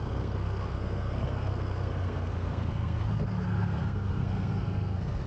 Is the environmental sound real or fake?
fake